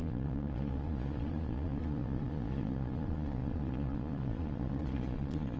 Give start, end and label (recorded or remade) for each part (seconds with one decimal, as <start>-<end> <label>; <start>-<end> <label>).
0.0-5.6 remade

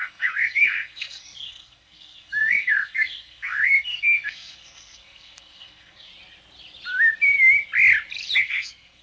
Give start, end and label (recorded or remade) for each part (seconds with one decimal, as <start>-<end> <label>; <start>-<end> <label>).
0.0-6.1 remade; 6.1-8.4 recorded; 8.4-9.0 remade

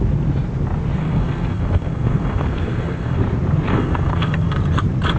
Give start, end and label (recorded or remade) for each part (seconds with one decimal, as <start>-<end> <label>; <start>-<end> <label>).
0.0-1.0 recorded; 1.0-3.2 remade; 3.2-3.7 recorded; 3.7-4.6 remade; 4.6-5.2 recorded

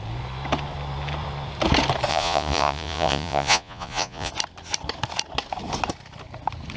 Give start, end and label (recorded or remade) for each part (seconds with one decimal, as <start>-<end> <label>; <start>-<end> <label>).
0.0-2.1 recorded; 2.1-4.3 remade; 4.3-6.8 recorded

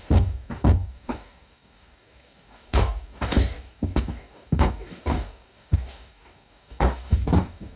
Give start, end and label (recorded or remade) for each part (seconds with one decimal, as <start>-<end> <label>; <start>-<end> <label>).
0.0-7.8 remade

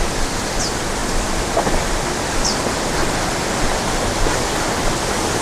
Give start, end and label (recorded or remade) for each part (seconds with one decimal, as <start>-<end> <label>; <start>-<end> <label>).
0.0-5.4 recorded